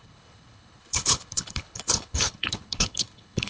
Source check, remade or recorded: remade